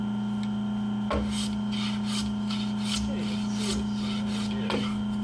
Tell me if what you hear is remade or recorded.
recorded